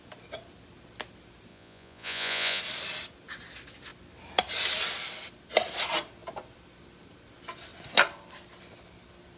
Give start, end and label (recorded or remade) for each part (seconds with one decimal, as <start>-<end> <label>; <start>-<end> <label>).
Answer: 0.0-1.5 recorded; 1.5-2.6 remade; 2.6-9.4 recorded